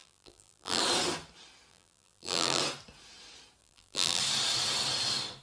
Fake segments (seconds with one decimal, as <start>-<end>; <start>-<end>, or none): 0.0-0.8; 1.7-2.6; 3.6-4.2